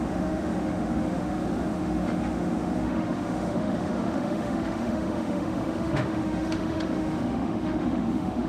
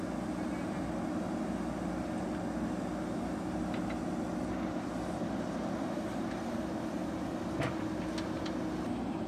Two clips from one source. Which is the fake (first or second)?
first